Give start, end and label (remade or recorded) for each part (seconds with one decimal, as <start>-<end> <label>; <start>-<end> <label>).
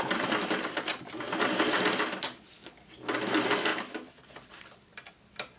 0.0-5.6 recorded